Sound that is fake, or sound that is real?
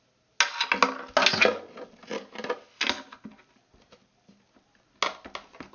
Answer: real